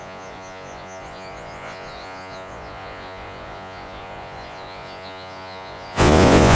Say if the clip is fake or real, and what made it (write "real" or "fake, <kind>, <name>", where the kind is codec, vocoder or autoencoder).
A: fake, vocoder, Vocos